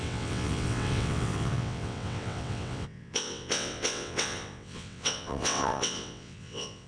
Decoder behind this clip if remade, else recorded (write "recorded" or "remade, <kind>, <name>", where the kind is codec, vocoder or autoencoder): remade, vocoder, WaveNeXt